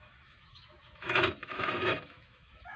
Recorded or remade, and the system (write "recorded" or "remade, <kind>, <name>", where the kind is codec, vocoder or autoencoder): remade, autoencoder, DAC-VAE